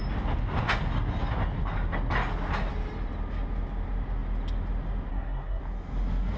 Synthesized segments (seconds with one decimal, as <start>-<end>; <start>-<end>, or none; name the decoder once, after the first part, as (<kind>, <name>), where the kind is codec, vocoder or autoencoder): 5.1-5.6 (codec, SNAC)